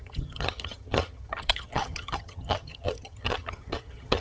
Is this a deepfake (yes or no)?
yes